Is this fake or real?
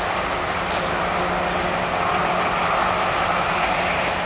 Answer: real